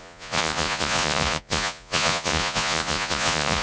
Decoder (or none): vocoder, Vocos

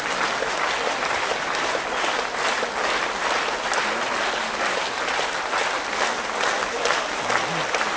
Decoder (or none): none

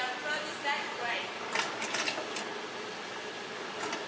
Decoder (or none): none